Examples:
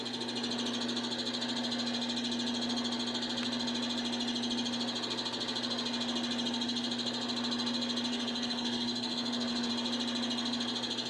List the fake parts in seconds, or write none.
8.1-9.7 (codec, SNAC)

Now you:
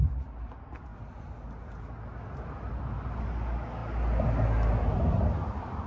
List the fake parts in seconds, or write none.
none

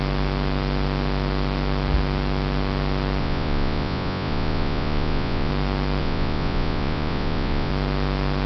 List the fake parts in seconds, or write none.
3.2-5.5 (vocoder, Vocos); 6.0-7.7

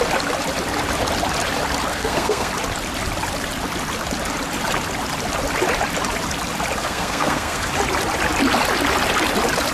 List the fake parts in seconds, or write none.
1.9-2.5 (codec, SNAC); 6.8-7.7

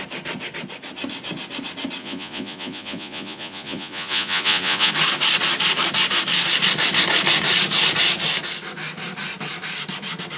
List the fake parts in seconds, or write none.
2.0-4.9 (vocoder, Vocos)

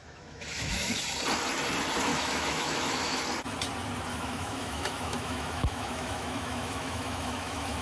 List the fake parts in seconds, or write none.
0.0-1.0 (autoencoder, DAC-VAE); 2.1-3.2; 4.1-7.8

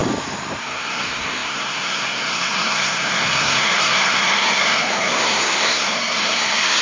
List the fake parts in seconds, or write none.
0.6-6.8 (codec, SNAC)

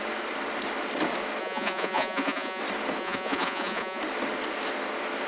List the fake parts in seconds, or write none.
1.4-2.6 (vocoder, Vocos); 3.0-4.0